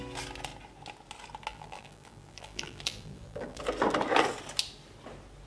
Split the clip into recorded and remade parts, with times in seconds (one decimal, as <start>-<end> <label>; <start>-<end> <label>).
0.0-1.5 recorded; 1.5-3.6 remade; 3.6-5.5 recorded